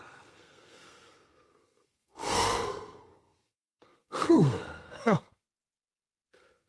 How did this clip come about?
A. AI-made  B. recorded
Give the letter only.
A